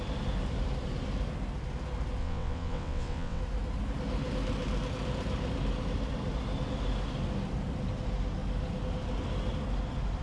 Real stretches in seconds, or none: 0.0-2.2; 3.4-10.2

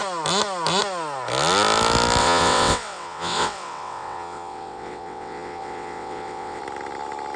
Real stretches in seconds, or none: 0.0-2.2; 6.6-7.4

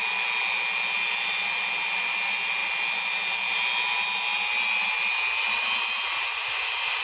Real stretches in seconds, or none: 0.0-7.0

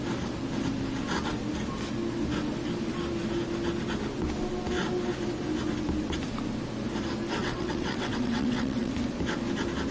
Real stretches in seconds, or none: 0.0-7.4; 8.9-9.9

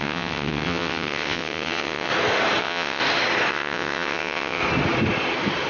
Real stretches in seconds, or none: 2.1-2.6; 3.0-3.5; 4.6-5.7

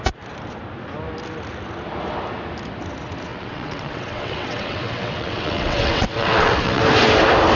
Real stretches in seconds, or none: 0.0-3.3; 6.8-7.6